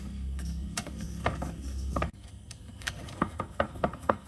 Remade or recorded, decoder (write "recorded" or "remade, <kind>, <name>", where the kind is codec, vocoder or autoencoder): remade, codec, SNAC